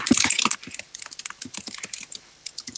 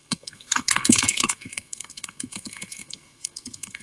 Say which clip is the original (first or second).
first